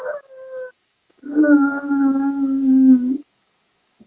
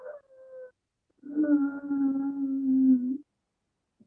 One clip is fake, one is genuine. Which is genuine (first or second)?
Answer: second